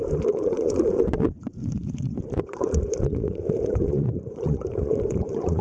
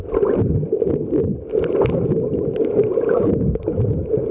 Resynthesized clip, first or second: first